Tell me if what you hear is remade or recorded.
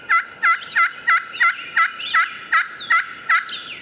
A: recorded